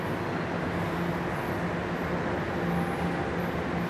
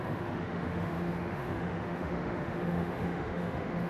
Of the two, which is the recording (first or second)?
first